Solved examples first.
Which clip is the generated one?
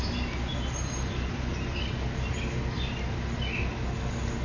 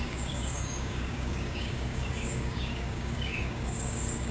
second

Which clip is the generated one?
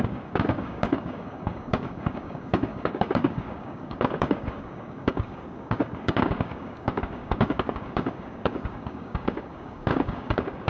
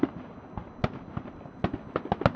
first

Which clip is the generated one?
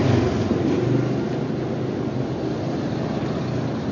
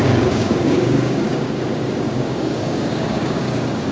second